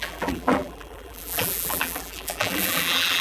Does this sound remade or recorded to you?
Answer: remade